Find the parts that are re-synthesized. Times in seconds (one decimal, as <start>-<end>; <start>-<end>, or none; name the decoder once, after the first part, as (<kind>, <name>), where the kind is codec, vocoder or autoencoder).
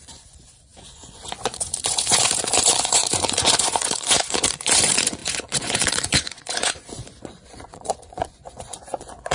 0.0-9.3 (vocoder, Vocos)